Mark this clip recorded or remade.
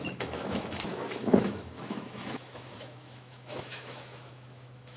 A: remade